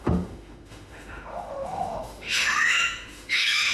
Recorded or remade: remade